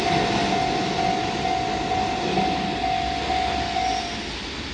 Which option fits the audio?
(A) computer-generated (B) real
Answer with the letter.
B